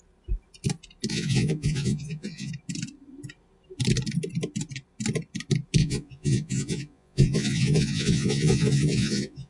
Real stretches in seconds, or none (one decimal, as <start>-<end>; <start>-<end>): 0.0-1.1; 2.5-5.8

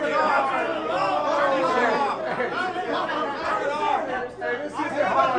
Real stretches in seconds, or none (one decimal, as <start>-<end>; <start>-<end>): 0.0-4.8

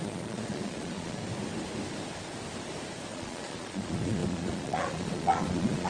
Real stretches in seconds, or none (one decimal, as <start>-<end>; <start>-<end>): 1.2-3.1

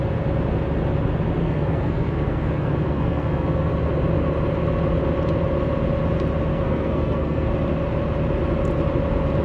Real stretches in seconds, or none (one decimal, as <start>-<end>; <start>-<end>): 0.0-1.4; 3.7-6.5; 7.5-9.4

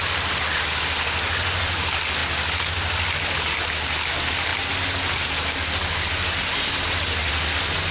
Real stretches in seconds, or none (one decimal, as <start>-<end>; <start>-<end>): 0.0-7.9